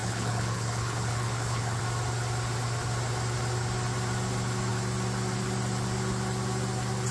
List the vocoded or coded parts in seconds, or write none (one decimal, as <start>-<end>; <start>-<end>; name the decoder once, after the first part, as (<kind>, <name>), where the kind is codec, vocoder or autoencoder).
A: 0.0-1.8 (codec, HILCodec)